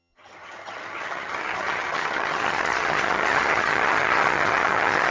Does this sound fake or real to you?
fake